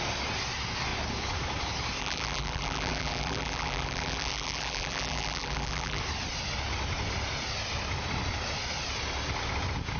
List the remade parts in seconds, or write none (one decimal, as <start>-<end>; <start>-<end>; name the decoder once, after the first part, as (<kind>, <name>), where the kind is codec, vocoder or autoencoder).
2.0-6.0 (vocoder, BigVGAN v2)